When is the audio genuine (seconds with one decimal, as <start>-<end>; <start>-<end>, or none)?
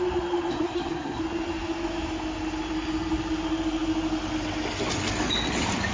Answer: 0.0-0.5; 1.2-5.9